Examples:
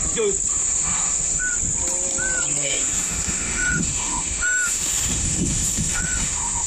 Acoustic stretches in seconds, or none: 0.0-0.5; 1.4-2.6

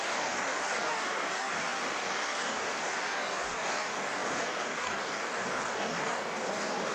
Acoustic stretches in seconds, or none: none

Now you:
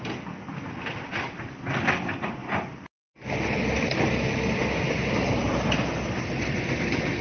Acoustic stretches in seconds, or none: 0.0-7.2

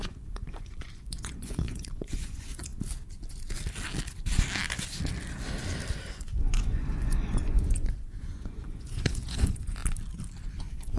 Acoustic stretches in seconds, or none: 2.7-6.0; 9.8-10.6